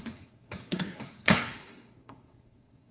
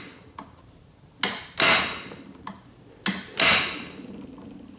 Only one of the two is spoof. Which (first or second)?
first